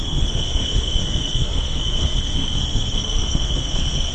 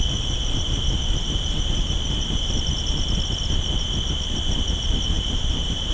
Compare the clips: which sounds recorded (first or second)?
second